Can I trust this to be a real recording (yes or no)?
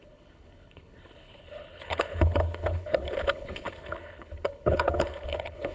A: no